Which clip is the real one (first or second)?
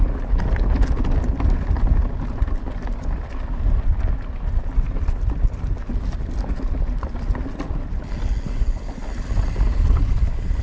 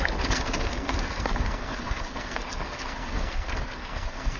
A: first